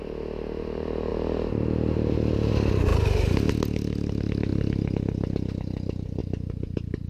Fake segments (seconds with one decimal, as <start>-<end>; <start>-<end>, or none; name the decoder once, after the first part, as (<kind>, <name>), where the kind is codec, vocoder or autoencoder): 1.1-2.5 (vocoder, BigVGAN v2); 6.2-7.1